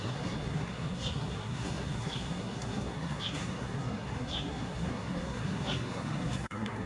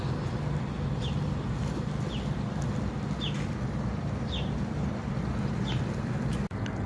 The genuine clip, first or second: second